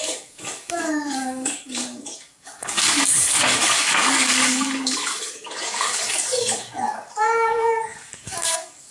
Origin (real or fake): fake